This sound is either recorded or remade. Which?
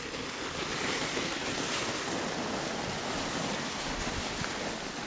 recorded